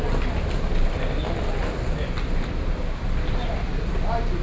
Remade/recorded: recorded